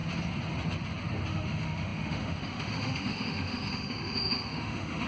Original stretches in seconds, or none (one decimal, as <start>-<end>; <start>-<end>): 0.0-1.3